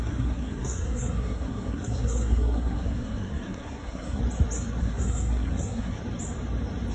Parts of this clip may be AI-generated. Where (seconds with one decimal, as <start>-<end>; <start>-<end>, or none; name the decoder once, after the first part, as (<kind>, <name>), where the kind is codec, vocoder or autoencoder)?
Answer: 0.0-4.2 (codec, SNAC); 4.8-6.0